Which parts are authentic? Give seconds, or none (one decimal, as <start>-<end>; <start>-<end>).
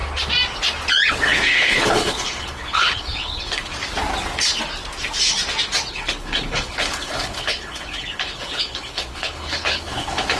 0.0-1.1; 3.7-5.9